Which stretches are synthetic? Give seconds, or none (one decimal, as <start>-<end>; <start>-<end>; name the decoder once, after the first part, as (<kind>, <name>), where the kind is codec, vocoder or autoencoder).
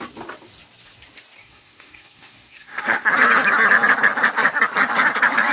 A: 1.4-3.1 (codec, SNAC)